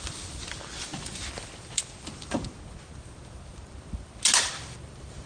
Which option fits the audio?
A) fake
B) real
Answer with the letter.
B